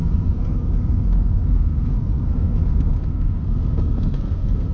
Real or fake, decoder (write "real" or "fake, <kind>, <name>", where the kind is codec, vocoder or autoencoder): fake, codec, SNAC